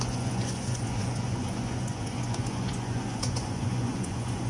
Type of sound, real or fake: fake